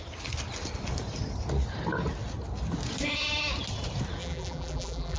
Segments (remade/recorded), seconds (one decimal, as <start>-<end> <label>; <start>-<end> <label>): 0.0-4.2 recorded; 4.2-5.2 remade